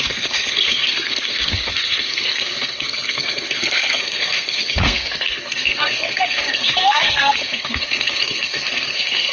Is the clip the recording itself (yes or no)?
no